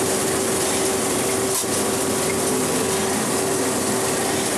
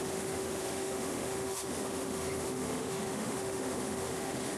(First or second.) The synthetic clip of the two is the second